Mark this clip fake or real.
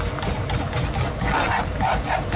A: real